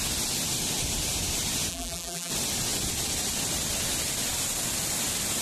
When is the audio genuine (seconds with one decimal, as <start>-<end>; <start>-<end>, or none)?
0.0-1.7; 2.3-5.4